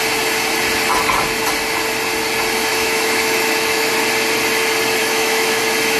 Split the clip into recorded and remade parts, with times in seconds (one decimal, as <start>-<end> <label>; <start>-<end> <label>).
0.0-2.7 recorded; 2.7-3.9 remade; 3.9-5.0 recorded; 5.0-5.6 remade; 5.6-6.0 recorded